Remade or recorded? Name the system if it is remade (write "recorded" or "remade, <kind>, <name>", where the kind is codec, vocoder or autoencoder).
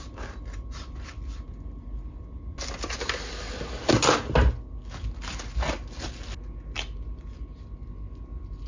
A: recorded